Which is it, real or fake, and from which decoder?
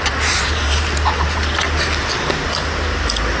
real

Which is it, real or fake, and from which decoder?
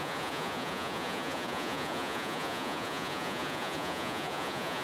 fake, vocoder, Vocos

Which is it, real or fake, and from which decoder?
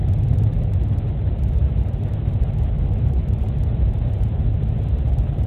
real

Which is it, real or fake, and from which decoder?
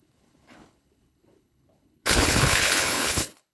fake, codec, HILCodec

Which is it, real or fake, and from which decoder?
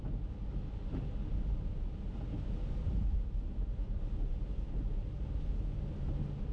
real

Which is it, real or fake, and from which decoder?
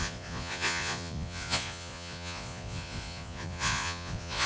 fake, vocoder, Vocos